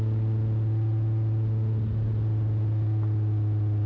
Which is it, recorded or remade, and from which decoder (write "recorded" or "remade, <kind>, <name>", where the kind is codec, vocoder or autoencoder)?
recorded